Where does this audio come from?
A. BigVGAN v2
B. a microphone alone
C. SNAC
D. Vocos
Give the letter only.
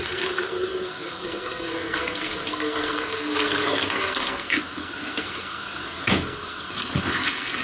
C